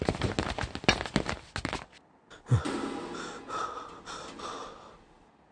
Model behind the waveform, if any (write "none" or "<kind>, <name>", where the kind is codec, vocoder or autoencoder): none